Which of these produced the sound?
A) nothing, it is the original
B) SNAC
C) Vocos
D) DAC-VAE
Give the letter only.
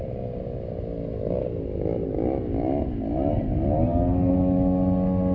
A